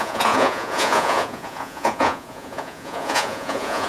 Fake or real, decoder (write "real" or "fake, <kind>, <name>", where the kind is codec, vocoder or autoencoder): fake, vocoder, Vocos